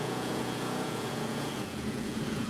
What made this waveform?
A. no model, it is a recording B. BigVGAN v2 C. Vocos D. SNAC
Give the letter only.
C